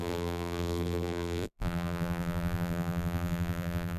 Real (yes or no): no